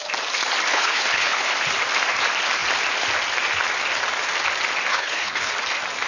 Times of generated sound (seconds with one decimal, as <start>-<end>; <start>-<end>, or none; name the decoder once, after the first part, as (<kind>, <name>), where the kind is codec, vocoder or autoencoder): 0.7-1.5 (codec, HILCodec); 4.9-5.5